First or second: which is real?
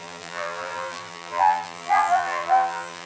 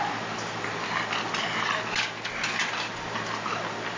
second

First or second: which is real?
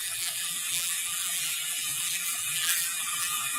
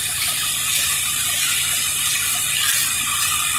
second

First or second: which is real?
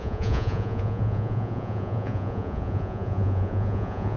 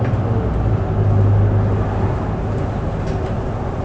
second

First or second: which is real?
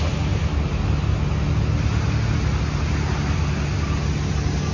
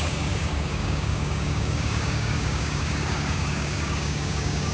first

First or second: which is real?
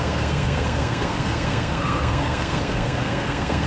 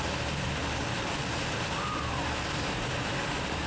second